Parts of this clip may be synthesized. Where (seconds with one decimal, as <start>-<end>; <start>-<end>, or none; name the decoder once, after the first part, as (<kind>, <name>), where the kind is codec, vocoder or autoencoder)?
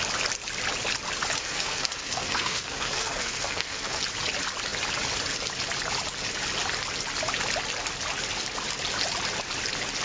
1.4-4.0 (codec, SNAC)